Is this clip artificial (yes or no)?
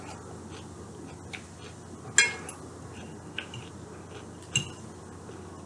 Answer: no